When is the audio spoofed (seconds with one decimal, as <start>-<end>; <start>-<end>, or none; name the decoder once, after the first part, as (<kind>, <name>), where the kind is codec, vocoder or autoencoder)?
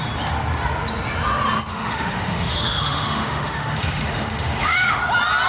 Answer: 1.7-5.0 (autoencoder, DAC-VAE)